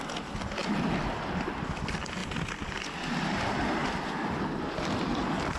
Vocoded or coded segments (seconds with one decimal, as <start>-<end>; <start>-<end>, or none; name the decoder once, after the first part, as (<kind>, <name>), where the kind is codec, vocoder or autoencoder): 2.2-2.8 (vocoder, BigVGAN v2)